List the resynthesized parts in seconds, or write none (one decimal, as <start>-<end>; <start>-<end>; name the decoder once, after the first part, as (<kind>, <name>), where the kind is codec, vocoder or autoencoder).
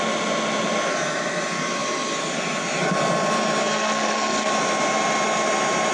3.6-4.5 (codec, SNAC)